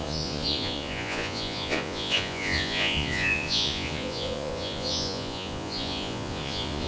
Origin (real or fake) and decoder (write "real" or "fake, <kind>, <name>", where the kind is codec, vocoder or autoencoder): fake, vocoder, Vocos